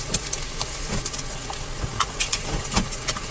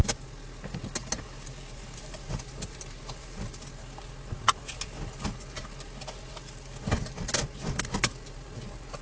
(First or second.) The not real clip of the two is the first